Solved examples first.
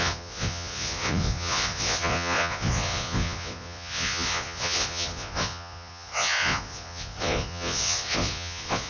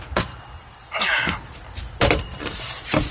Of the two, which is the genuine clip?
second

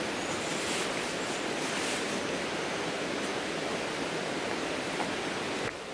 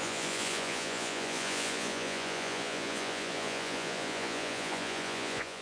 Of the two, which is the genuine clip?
first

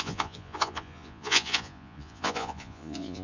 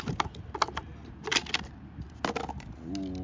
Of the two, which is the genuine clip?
second